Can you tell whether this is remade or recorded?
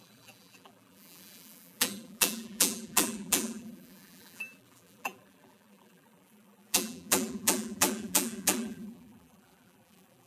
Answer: remade